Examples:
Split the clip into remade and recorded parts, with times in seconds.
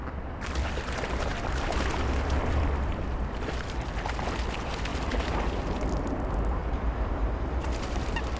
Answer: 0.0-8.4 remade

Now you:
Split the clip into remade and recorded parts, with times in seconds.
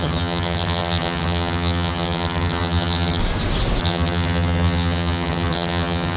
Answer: 0.0-3.2 remade; 3.2-3.8 recorded; 3.8-6.2 remade